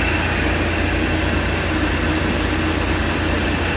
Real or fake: real